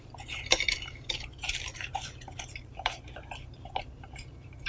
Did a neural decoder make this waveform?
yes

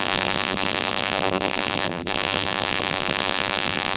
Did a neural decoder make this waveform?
yes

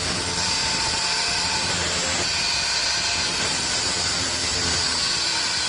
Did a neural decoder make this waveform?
yes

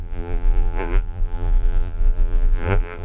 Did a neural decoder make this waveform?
yes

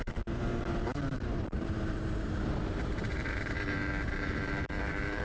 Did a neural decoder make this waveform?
yes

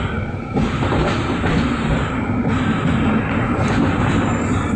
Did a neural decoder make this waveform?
yes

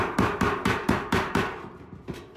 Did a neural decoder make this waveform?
yes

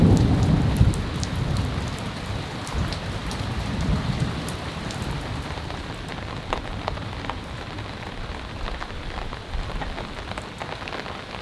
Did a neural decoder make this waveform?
no